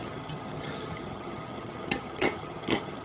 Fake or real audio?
fake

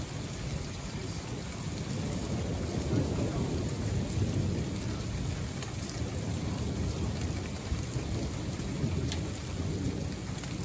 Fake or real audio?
real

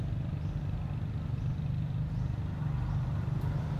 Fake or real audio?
real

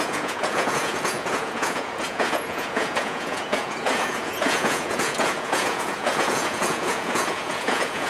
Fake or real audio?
fake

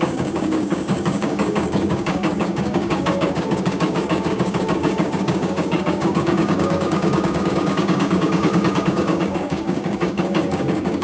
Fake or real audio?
fake